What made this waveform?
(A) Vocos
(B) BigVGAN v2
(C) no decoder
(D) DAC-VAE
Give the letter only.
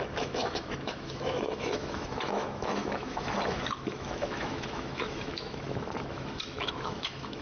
D